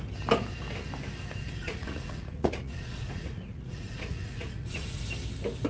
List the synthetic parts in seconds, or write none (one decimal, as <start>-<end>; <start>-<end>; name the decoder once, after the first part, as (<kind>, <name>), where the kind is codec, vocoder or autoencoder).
1.6-5.0 (vocoder, Vocos)